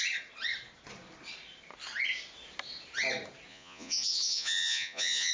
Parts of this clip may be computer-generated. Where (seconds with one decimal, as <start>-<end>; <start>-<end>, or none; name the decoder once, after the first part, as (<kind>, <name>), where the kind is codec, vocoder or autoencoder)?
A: 3.5-5.3 (vocoder, Vocos)